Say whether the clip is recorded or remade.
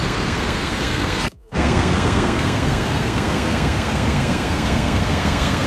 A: remade